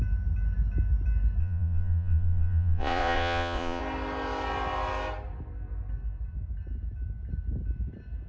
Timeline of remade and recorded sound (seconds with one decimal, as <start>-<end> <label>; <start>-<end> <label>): 0.0-1.4 recorded; 1.4-3.8 remade; 3.8-8.3 recorded